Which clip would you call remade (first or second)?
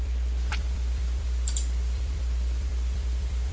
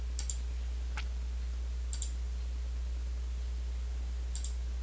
first